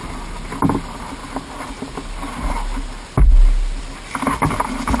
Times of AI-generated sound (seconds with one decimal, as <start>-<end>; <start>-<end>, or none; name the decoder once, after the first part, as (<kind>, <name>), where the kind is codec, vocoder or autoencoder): none